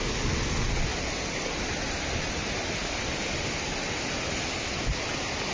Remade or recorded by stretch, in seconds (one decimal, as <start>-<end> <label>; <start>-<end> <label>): 0.0-5.5 recorded